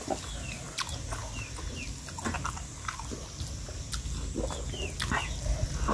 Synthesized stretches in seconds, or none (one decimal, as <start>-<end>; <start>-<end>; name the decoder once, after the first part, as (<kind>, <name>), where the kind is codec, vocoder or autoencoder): none